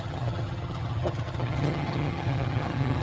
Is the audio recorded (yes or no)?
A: no